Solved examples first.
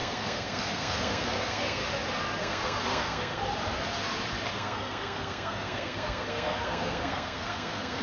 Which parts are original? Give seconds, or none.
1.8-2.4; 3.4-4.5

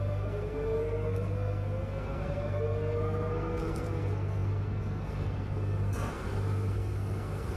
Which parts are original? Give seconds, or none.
none

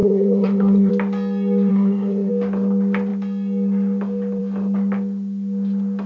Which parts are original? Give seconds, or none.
0.9-1.7; 2.3-6.1

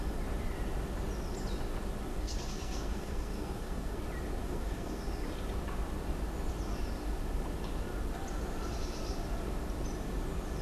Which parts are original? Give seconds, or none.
0.0-2.1; 4.0-4.4; 5.0-10.6